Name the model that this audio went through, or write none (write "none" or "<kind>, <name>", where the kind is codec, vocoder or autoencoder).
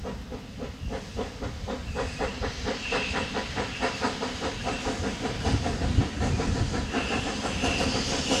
none